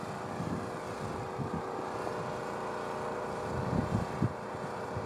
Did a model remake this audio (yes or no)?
no